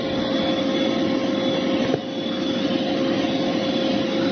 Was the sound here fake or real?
real